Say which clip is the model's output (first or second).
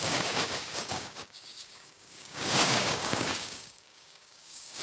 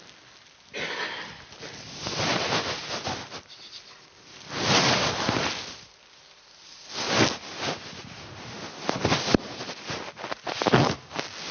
first